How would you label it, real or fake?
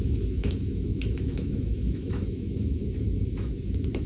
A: fake